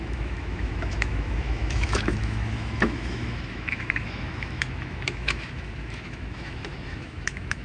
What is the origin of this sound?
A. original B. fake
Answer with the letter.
B